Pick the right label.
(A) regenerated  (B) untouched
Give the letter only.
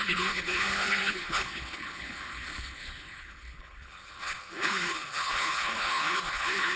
A